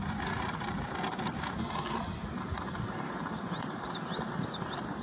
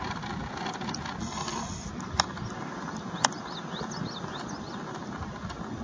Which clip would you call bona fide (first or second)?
second